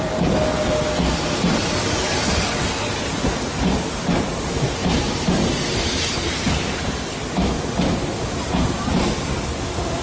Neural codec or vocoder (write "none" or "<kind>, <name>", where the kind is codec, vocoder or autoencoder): none